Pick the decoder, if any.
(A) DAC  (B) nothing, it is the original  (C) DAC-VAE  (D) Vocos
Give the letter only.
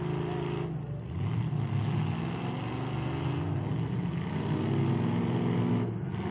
B